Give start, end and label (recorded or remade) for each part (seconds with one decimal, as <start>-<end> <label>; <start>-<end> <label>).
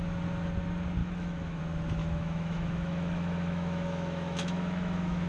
0.0-1.0 recorded; 1.0-1.6 remade; 1.6-2.0 recorded; 2.0-5.3 remade